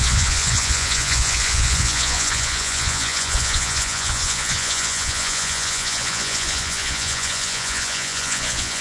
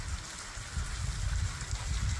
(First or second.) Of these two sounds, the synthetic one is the first